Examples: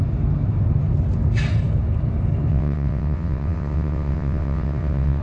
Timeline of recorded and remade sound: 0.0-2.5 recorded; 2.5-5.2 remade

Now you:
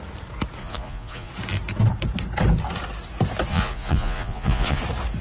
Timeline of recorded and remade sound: 0.0-0.6 recorded; 0.6-1.3 remade; 1.3-3.5 recorded; 3.5-4.8 remade; 4.8-5.2 recorded

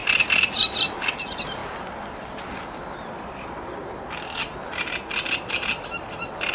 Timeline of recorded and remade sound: 0.0-6.5 recorded